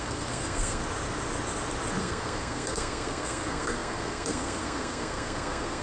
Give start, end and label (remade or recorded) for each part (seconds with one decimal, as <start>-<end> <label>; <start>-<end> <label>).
0.0-0.8 remade; 0.8-2.0 recorded; 2.0-5.8 remade

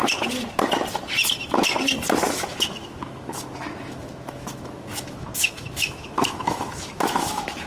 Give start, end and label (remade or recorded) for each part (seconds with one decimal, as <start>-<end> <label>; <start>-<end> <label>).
0.0-2.3 recorded; 2.3-7.7 remade